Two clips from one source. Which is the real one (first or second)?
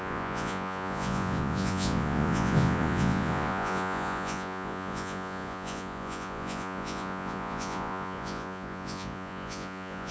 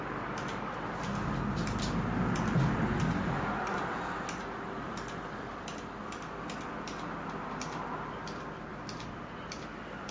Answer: second